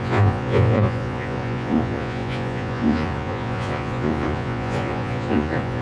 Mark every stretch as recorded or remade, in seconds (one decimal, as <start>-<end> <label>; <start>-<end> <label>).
0.0-5.8 remade